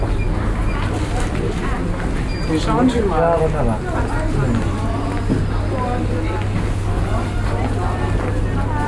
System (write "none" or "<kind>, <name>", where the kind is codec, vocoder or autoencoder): none